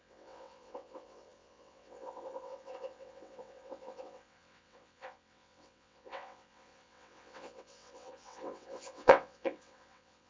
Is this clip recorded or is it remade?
remade